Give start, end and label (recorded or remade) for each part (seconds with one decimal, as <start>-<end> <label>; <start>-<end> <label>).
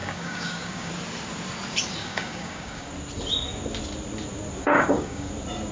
0.0-0.9 remade; 0.9-2.0 recorded; 2.0-2.9 remade; 2.9-4.6 recorded; 4.6-5.3 remade; 5.3-5.7 recorded